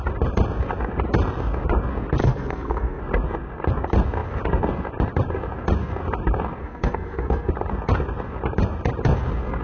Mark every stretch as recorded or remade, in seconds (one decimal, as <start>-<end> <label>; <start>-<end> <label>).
0.0-2.2 recorded; 2.2-3.0 remade; 3.0-6.6 recorded; 6.6-7.5 remade; 7.5-9.6 recorded